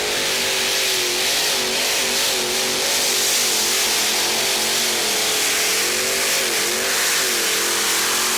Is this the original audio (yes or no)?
yes